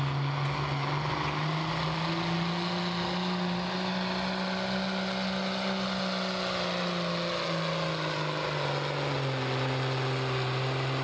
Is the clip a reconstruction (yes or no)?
no